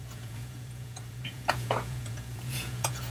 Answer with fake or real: fake